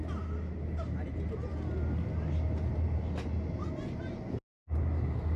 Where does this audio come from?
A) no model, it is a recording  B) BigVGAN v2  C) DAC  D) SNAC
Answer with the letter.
A